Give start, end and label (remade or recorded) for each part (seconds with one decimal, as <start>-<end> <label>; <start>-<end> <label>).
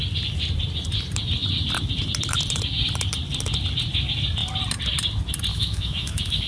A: 0.0-5.5 recorded; 5.5-6.5 remade